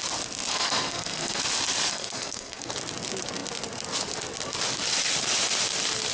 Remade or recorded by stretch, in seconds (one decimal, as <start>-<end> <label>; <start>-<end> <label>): 0.0-0.5 recorded; 0.5-1.4 remade; 1.4-1.9 recorded; 1.9-2.7 remade; 2.7-6.1 recorded

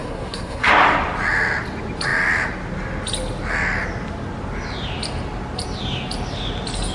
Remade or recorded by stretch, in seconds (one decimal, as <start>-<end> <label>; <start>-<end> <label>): 0.0-0.7 remade; 0.7-6.9 recorded

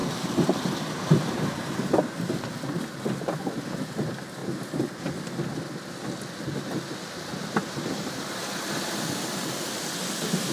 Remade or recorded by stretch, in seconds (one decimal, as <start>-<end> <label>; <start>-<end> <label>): 0.0-2.0 remade; 2.0-4.4 recorded; 4.4-5.0 remade; 5.0-7.3 recorded; 7.3-8.4 remade; 8.4-10.5 recorded

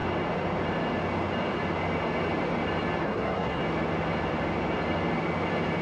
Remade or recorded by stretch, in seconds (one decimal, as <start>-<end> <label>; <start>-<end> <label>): 0.0-3.0 recorded; 3.0-3.6 remade; 3.6-5.8 recorded

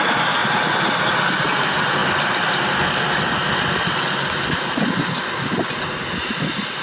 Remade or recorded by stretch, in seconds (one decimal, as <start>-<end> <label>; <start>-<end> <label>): 0.0-6.8 recorded

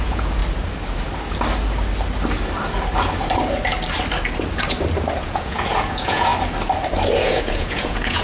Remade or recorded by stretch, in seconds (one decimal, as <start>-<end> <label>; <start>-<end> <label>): 0.0-0.4 remade; 0.4-5.2 recorded; 5.2-6.3 remade; 6.3-7.2 recorded; 7.2-8.2 remade